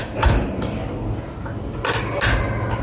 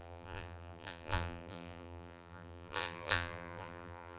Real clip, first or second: first